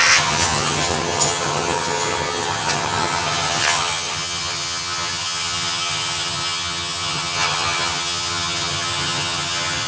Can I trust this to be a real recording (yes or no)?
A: no